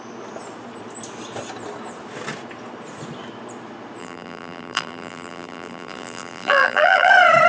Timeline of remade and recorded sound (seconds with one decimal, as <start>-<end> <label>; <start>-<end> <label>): 0.0-4.0 recorded; 4.0-7.1 remade; 7.1-7.5 recorded